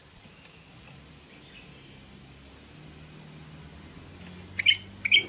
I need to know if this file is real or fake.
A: real